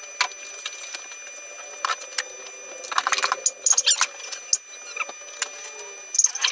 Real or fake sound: real